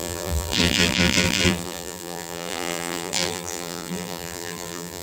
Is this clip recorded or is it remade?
remade